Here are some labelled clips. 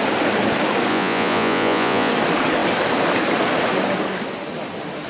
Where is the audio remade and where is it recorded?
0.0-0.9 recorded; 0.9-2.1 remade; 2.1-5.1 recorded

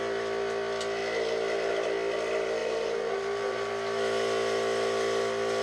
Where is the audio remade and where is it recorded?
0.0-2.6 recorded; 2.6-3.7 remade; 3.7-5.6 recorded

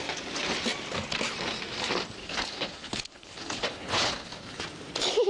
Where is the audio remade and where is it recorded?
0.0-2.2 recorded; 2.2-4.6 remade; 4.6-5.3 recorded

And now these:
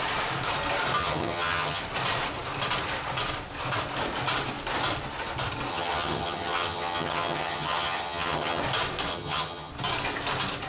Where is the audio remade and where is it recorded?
0.0-1.0 recorded; 1.0-1.8 remade; 1.8-5.7 recorded; 5.7-8.6 remade; 8.6-9.1 recorded; 9.1-9.7 remade; 9.7-10.7 recorded

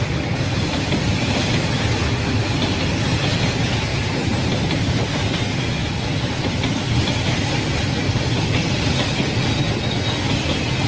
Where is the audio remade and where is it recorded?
0.0-10.9 recorded